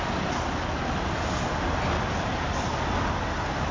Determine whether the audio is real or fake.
real